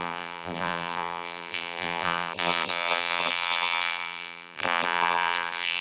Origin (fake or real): fake